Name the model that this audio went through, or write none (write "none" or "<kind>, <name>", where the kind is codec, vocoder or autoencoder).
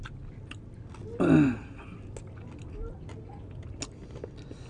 none